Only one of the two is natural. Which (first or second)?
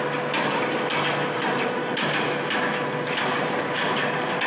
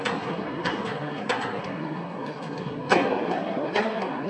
first